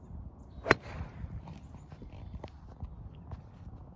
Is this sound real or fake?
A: real